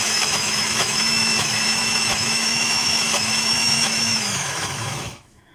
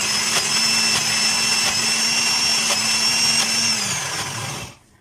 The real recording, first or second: second